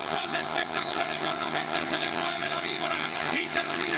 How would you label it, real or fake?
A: fake